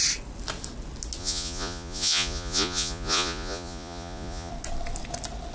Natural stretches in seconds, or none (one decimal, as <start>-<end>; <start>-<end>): 0.0-1.2; 4.5-5.5